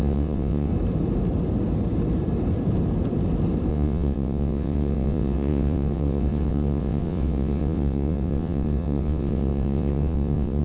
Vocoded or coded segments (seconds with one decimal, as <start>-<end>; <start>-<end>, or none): 0.0-0.7; 3.7-10.6